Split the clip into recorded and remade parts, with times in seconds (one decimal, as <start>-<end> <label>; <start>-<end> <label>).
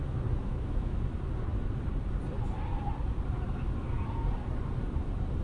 0.0-0.4 recorded; 0.4-1.0 remade; 1.0-5.4 recorded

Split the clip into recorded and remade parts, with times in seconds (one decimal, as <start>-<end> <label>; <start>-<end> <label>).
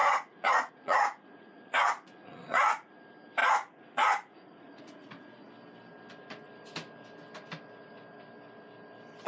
0.0-3.0 remade; 3.0-3.4 recorded; 3.4-5.5 remade; 5.5-9.3 recorded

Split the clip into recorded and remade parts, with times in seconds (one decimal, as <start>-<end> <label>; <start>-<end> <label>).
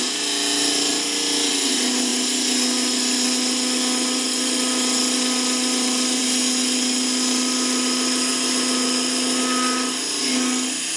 0.0-11.0 recorded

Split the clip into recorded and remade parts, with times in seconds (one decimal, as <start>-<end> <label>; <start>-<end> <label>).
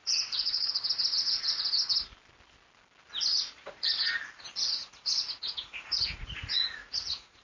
0.0-0.7 remade; 0.7-3.3 recorded; 3.3-4.1 remade; 4.1-4.8 recorded; 4.8-7.4 remade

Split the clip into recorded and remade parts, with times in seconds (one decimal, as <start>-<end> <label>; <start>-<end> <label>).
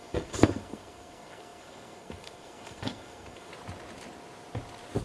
0.0-3.5 remade; 3.5-5.0 recorded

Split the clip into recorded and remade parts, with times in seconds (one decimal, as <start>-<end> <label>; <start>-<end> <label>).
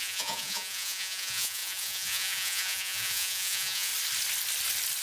0.0-3.9 remade; 3.9-5.0 recorded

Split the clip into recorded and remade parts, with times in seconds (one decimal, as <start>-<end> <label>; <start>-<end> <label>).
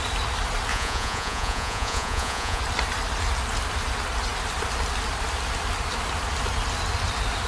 0.0-0.7 recorded; 0.7-2.6 remade; 2.6-7.5 recorded